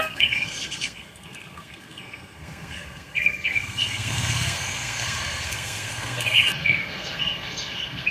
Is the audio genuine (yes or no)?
no